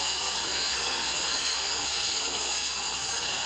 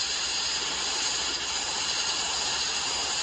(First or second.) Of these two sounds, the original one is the second